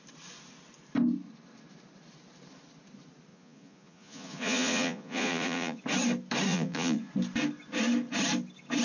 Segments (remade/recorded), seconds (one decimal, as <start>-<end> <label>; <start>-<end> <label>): 0.0-3.3 recorded; 3.3-5.8 remade; 5.8-6.5 recorded; 6.5-7.1 remade; 7.1-8.8 recorded